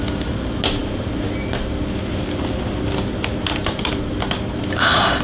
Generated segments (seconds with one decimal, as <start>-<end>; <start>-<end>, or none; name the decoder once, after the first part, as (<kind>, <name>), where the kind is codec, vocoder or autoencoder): none

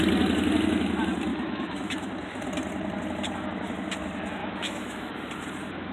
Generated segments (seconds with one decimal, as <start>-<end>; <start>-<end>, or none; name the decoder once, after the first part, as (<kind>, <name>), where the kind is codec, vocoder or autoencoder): 1.3-2.1 (autoencoder, DAC-VAE); 4.4-5.1